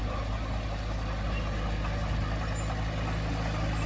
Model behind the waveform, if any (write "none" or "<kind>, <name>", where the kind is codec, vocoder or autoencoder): none